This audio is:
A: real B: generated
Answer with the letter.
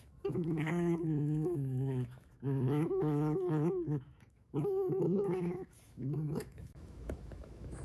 B